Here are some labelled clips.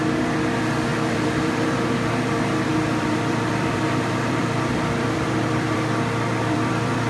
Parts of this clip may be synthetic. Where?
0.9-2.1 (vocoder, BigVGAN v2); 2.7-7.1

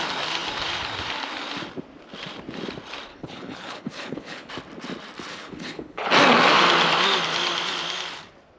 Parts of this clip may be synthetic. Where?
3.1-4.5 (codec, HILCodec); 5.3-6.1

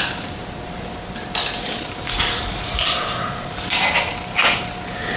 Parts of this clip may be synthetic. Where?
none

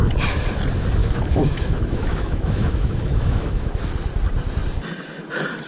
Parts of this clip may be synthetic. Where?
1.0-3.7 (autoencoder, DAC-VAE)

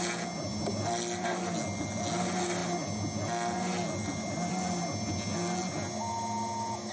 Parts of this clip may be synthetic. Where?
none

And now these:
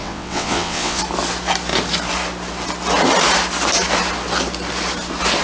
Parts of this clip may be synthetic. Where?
0.0-1.0 (vocoder, WaveNeXt)